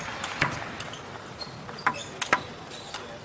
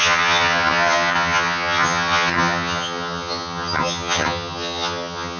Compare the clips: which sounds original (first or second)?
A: first